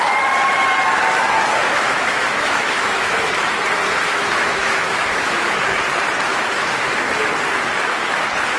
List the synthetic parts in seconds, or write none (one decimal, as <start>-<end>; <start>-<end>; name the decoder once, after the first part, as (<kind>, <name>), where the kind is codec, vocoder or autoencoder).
1.6-3.3 (autoencoder, DAC-VAE); 4.1-5.6; 6.3-7.0